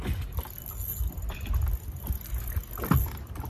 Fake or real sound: real